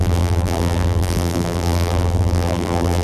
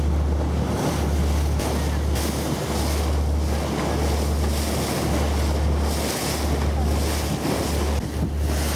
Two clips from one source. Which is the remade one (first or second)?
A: first